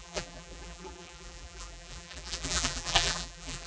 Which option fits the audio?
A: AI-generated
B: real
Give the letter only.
A